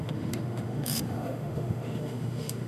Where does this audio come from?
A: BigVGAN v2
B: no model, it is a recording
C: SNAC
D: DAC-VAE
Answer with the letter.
D